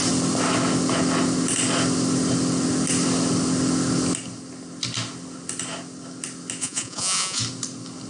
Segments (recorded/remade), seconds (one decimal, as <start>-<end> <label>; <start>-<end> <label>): 0.0-6.6 recorded; 6.6-7.4 remade; 7.4-8.1 recorded